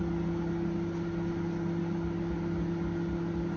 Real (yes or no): yes